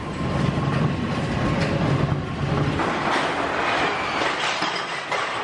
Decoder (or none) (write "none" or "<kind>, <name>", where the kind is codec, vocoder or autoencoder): none